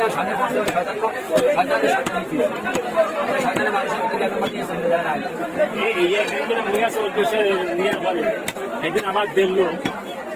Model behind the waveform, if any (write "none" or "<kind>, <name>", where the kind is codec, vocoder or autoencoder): vocoder, BigVGAN v2